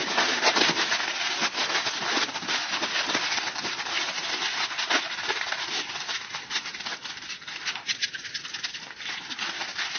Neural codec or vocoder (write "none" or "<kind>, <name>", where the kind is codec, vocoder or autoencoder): none